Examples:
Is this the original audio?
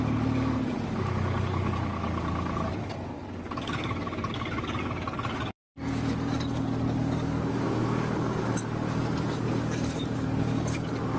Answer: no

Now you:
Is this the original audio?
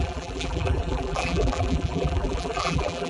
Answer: no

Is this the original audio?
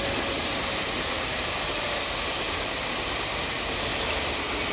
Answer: yes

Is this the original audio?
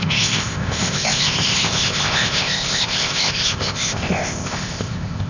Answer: no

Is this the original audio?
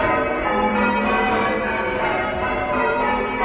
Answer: no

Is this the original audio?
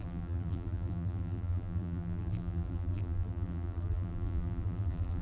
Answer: no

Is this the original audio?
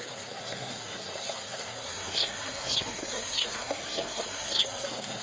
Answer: no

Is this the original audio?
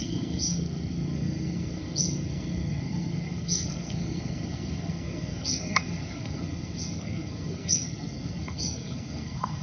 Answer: no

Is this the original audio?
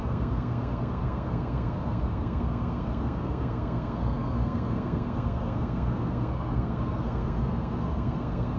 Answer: no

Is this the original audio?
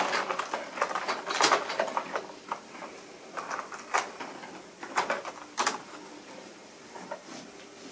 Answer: yes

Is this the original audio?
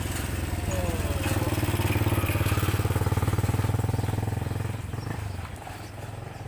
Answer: yes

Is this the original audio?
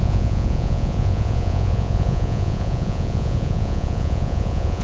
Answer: no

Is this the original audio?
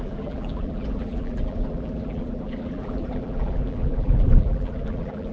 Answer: no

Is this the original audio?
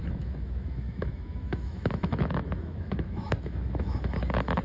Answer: no